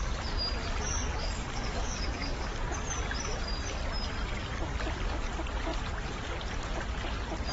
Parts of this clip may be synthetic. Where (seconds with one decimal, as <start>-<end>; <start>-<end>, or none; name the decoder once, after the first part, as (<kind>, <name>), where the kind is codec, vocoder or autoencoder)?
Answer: 1.2-2.6 (codec, DAC)